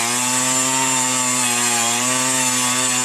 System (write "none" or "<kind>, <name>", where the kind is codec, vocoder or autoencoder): none